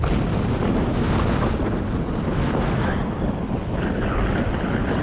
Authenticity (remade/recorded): recorded